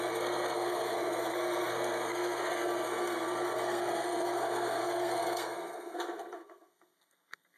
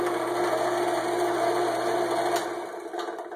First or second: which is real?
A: second